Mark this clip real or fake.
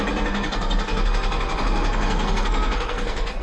fake